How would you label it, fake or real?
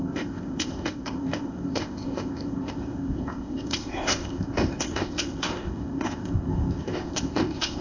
fake